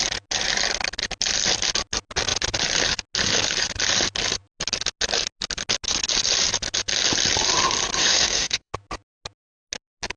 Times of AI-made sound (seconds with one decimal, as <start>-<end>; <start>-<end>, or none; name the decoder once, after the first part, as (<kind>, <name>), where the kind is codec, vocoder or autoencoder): 8.0-8.7 (autoencoder, DAC-VAE)